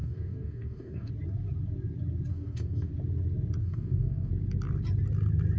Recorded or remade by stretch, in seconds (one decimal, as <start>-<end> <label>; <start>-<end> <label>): 0.0-1.1 remade; 1.1-2.3 recorded; 2.3-2.9 remade; 2.9-3.6 recorded; 3.6-4.3 remade; 4.3-5.6 recorded